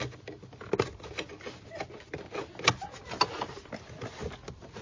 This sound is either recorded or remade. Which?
recorded